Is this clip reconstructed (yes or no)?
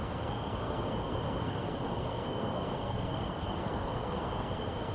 yes